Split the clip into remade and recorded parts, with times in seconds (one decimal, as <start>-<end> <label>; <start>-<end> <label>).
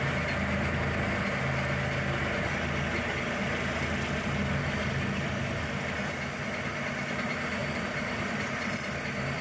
0.0-7.6 recorded; 7.6-9.4 remade